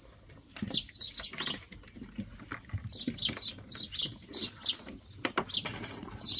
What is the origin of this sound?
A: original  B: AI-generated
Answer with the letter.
A